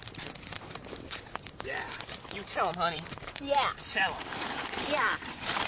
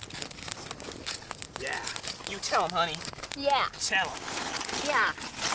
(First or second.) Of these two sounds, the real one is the second